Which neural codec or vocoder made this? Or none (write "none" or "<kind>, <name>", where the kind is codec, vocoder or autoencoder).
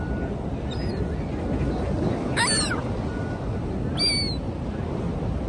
none